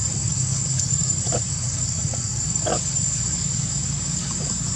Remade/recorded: remade